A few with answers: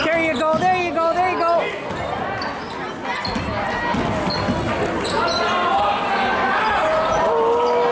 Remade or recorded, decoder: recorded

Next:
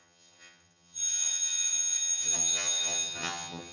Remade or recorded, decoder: remade, vocoder, HiFi-GAN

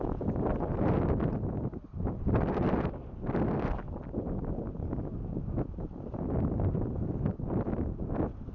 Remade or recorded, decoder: recorded